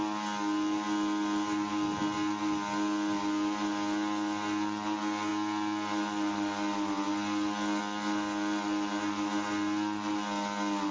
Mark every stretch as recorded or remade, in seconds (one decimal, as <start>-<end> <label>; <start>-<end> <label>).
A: 0.0-10.9 recorded